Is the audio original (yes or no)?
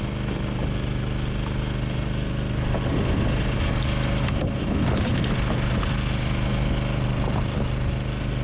yes